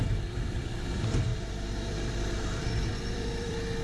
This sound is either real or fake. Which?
fake